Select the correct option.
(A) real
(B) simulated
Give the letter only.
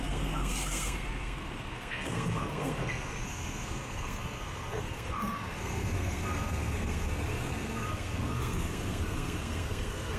B